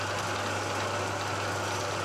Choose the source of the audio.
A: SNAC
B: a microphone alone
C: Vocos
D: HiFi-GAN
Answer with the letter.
B